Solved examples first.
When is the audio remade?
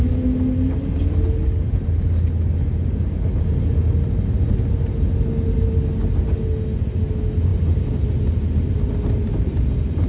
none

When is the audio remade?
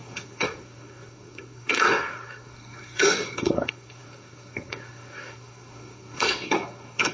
0.0-7.1 (codec, SNAC)